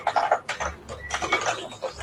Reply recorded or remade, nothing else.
recorded